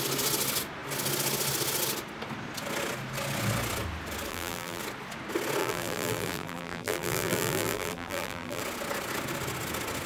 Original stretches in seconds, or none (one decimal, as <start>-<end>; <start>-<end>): 0.0-4.3; 4.8-5.6; 8.6-10.1